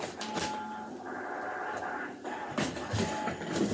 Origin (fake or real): real